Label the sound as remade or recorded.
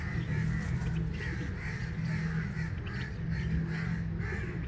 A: recorded